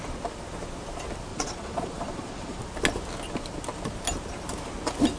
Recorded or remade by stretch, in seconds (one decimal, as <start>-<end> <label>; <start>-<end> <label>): 0.0-1.3 recorded; 1.3-2.6 remade; 2.6-5.2 recorded